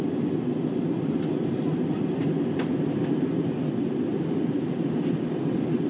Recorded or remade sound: recorded